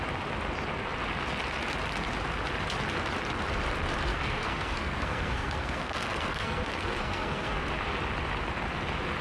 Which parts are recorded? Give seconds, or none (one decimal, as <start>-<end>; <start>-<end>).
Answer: 0.0-4.1; 7.7-9.2